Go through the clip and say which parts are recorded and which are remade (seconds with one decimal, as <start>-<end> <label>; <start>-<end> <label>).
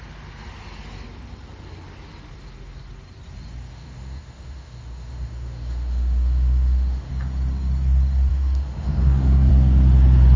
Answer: 0.0-3.7 recorded; 3.7-7.1 remade; 7.1-8.3 recorded; 8.3-9.5 remade; 9.5-10.4 recorded